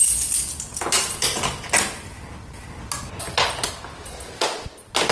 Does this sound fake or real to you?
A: real